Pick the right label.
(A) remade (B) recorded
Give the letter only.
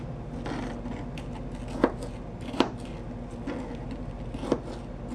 B